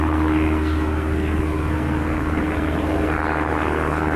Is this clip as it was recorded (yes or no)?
no